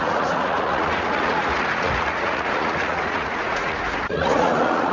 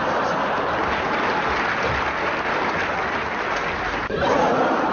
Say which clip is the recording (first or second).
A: second